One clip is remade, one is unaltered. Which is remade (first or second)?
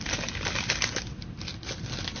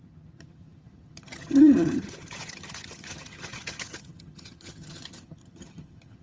second